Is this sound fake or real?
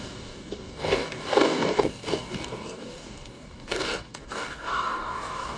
fake